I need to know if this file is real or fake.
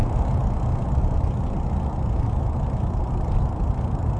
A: real